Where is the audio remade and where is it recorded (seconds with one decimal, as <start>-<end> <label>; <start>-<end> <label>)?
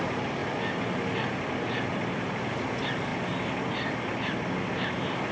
0.0-5.3 recorded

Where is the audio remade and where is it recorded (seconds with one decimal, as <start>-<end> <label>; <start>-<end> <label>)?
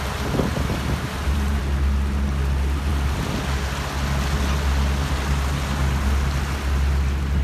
0.0-0.5 recorded; 0.5-1.6 remade; 1.6-7.4 recorded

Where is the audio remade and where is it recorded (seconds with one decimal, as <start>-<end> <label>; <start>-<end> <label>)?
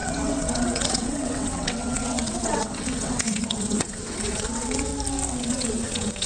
0.0-4.9 remade; 4.9-5.4 recorded; 5.4-6.3 remade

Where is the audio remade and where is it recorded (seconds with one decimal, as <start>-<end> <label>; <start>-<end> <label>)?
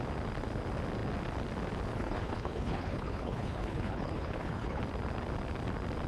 0.0-1.9 recorded; 1.9-4.8 remade; 4.8-6.1 recorded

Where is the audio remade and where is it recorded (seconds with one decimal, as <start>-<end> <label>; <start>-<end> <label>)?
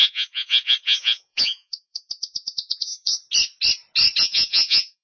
0.0-3.2 remade; 3.2-4.2 recorded; 4.2-5.0 remade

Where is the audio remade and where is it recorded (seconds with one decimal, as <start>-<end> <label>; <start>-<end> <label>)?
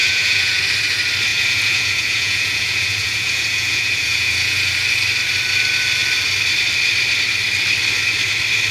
0.0-0.6 remade; 0.6-1.3 recorded; 1.3-4.7 remade; 4.7-8.7 recorded